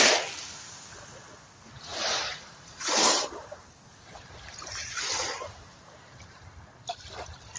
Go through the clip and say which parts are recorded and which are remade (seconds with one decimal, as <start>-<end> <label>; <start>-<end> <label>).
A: 0.0-1.9 recorded; 1.9-6.5 remade; 6.5-7.6 recorded